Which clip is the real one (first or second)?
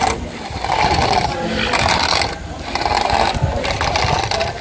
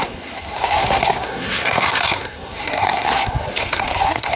first